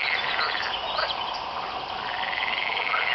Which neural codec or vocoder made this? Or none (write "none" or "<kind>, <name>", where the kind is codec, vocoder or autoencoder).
none